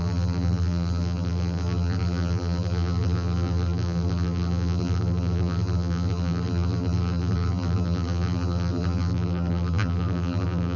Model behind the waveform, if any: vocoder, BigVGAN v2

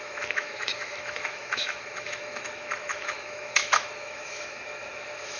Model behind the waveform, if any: autoencoder, DAC-VAE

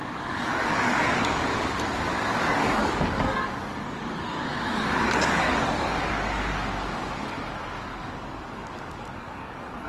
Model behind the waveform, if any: codec, DAC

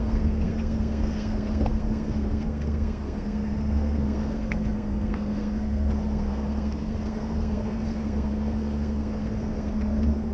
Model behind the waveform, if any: codec, SNAC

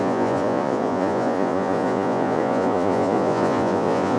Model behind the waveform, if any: vocoder, Vocos